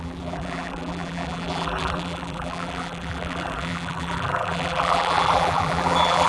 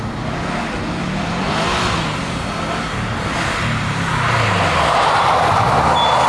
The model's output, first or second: first